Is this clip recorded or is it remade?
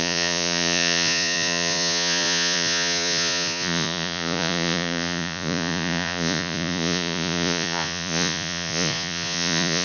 remade